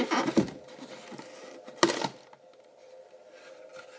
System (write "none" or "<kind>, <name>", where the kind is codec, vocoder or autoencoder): none